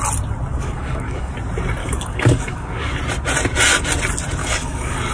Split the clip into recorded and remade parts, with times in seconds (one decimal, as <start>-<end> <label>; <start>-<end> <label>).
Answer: 0.0-0.5 recorded; 0.5-1.3 remade; 1.3-1.8 recorded; 1.8-3.0 remade; 3.0-4.4 recorded; 4.4-5.1 remade